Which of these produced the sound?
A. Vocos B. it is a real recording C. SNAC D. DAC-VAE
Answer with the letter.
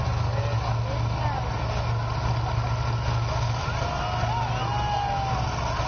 B